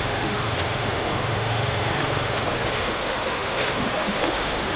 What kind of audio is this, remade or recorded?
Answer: remade